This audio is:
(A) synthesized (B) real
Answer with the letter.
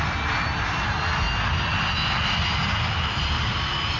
B